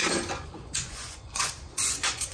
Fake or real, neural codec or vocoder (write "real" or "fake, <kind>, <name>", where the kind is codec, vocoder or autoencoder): fake, vocoder, Vocos